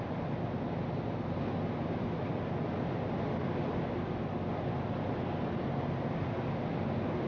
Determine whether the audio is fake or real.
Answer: real